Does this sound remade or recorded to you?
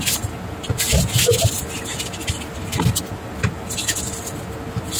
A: recorded